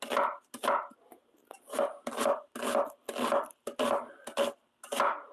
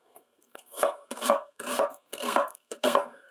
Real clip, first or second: first